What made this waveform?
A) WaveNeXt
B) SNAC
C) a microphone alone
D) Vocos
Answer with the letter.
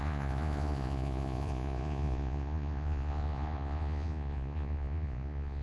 D